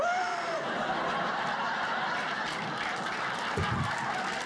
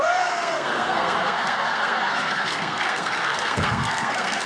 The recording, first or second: first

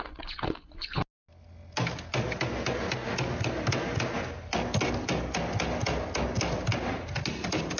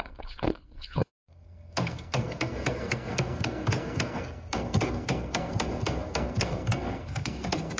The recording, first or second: first